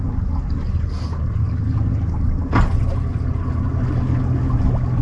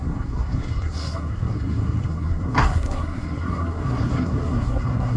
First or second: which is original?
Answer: first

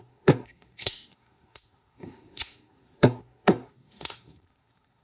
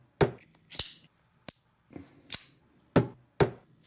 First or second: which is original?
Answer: second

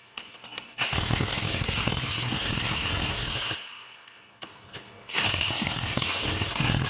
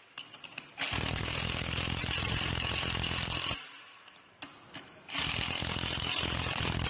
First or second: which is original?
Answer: second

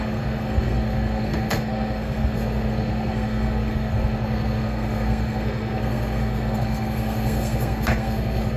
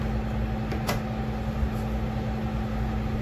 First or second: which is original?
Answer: second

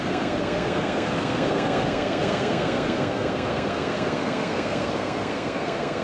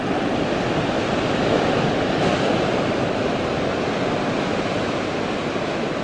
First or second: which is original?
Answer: second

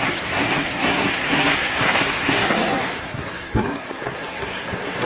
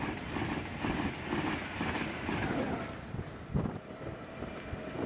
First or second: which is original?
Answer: second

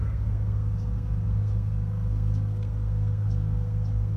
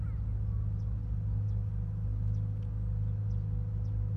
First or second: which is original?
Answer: second